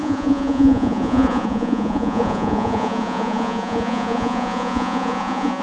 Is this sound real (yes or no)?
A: no